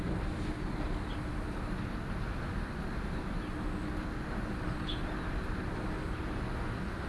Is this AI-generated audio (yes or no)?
no